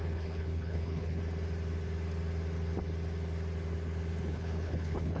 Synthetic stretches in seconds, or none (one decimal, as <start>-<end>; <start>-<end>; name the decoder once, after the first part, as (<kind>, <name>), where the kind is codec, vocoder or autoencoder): 0.0-1.2 (codec, HILCodec); 4.3-5.2